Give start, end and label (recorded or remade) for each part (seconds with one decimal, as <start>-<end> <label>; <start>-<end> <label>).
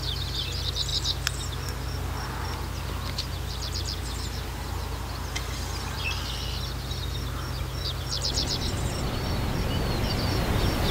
0.0-10.9 recorded